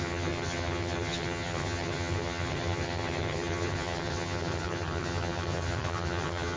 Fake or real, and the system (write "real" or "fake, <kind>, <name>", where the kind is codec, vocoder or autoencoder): fake, vocoder, HiFi-GAN